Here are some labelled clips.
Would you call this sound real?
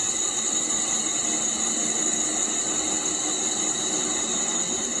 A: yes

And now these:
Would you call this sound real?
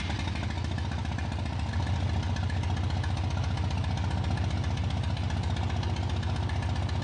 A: yes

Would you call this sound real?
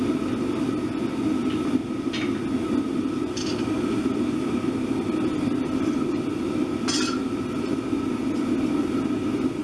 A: yes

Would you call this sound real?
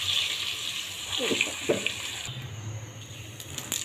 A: yes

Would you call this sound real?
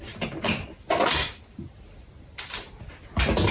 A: yes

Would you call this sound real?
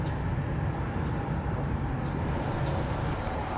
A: yes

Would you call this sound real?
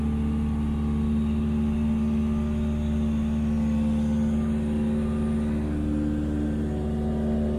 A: yes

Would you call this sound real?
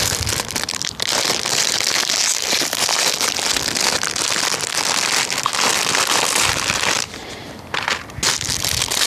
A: yes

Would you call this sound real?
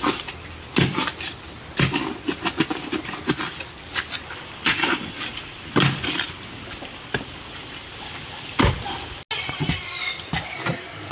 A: yes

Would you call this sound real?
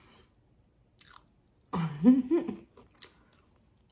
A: yes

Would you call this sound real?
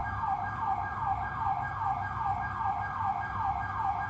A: yes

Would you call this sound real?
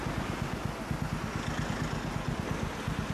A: no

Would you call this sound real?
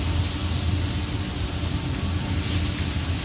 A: yes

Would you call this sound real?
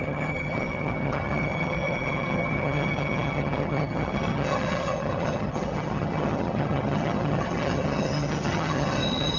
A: no